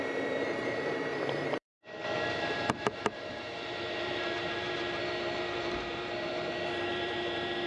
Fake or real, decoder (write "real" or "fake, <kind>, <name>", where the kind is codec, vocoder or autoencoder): fake, vocoder, BigVGAN v2